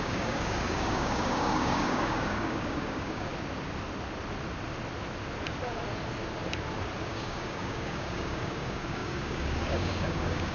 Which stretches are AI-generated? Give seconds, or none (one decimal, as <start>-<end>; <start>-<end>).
0.0-3.3; 7.1-10.5

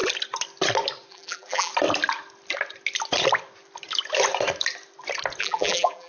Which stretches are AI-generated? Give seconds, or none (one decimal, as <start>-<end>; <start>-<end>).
1.1-1.7; 5.4-6.1

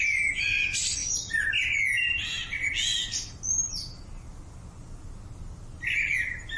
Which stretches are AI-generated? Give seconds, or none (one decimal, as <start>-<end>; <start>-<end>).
none

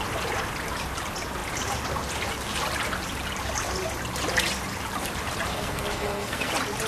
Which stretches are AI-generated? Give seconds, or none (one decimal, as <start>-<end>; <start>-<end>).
5.5-6.5

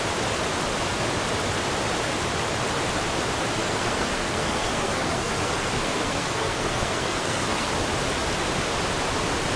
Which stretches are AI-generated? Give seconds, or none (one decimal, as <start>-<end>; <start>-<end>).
3.6-7.7

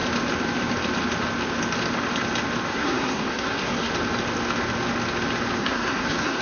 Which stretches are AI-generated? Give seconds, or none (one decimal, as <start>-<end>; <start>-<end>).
2.7-3.9; 5.6-6.4